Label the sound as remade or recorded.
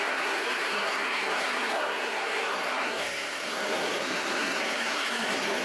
remade